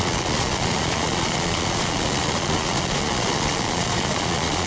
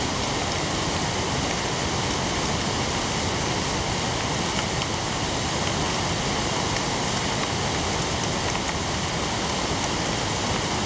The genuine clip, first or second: second